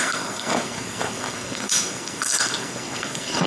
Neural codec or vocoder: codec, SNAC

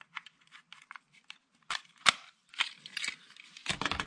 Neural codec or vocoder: none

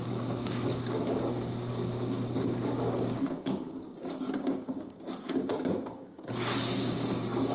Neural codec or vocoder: codec, DAC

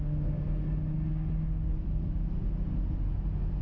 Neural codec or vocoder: none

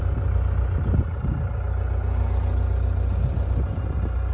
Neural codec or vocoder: none